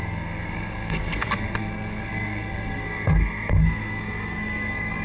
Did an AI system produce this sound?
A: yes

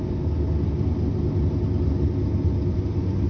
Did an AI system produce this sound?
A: no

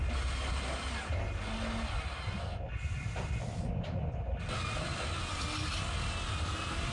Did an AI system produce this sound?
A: no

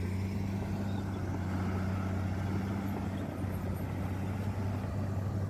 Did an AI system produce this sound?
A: no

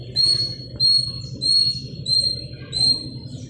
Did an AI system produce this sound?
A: no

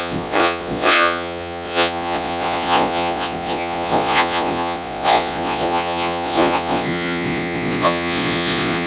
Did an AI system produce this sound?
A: yes